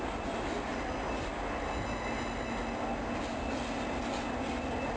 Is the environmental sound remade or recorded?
recorded